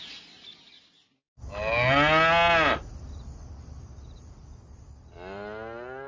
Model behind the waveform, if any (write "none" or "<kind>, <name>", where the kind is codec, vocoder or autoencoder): none